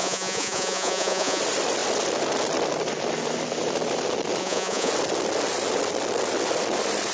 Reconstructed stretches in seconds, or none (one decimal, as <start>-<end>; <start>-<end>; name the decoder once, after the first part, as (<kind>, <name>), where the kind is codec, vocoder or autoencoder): 0.0-1.4 (vocoder, Vocos); 4.4-4.9